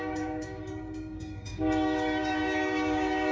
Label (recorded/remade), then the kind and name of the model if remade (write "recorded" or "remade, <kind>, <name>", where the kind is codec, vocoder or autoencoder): remade, codec, DAC